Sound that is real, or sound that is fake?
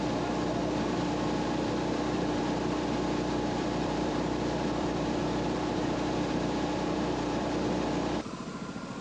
fake